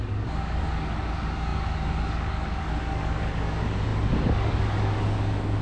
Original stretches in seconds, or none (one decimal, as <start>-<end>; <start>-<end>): none